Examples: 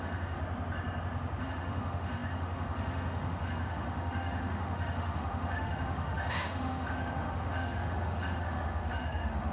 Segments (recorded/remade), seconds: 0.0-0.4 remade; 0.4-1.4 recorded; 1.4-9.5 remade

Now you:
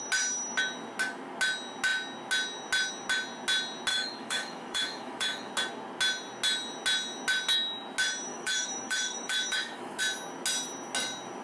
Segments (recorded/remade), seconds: 0.0-3.9 recorded; 3.9-5.5 remade; 5.5-8.3 recorded; 8.3-10.0 remade; 10.0-11.4 recorded

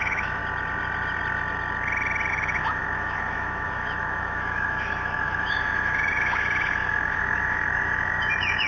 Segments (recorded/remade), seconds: 0.0-0.4 remade; 0.4-2.3 recorded; 2.3-8.7 remade

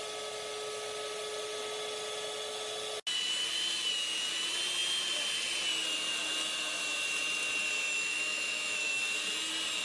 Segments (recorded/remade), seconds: 0.0-7.9 recorded; 7.9-9.0 remade; 9.0-9.8 recorded

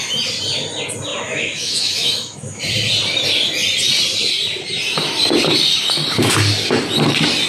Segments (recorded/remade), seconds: 0.0-1.1 recorded; 1.1-2.6 remade; 2.6-7.5 recorded

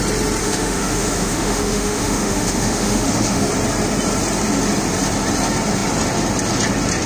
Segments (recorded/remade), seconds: 0.0-0.4 recorded; 0.4-3.5 remade; 3.5-7.1 recorded

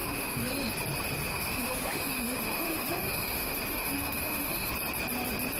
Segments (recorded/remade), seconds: 0.0-0.5 remade; 0.5-1.3 recorded; 1.3-4.7 remade; 4.7-5.6 recorded

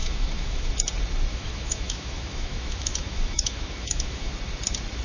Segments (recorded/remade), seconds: 0.0-0.7 remade; 0.7-1.3 recorded; 1.3-4.3 remade; 4.3-5.0 recorded